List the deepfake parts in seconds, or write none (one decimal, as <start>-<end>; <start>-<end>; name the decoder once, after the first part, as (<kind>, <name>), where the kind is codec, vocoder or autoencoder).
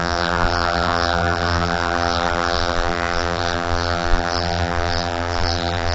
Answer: 0.0-5.9 (vocoder, BigVGAN v2)